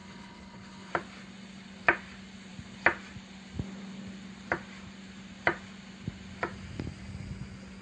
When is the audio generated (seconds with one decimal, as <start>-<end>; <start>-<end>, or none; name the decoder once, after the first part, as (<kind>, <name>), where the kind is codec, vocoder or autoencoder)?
0.0-0.9 (codec, HILCodec)